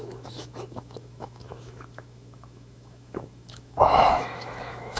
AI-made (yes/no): yes